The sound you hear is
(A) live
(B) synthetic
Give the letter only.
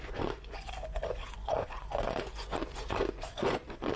B